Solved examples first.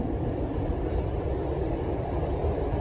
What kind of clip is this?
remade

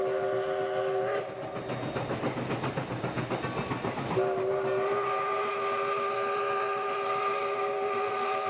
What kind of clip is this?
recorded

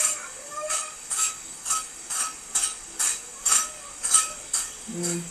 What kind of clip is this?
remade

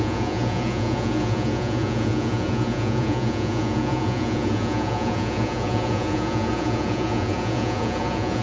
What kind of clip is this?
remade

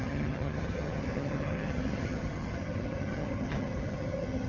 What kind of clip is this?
remade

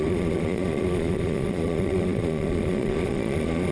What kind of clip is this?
remade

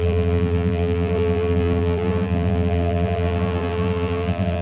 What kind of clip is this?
remade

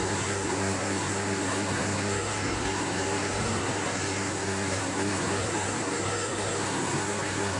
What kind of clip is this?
remade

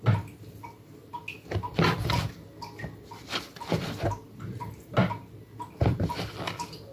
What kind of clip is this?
recorded